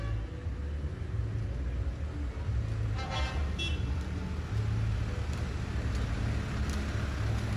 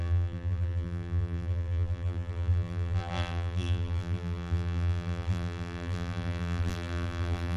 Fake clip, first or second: second